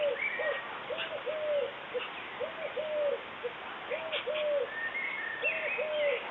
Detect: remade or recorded recorded